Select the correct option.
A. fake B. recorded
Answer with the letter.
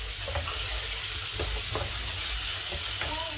B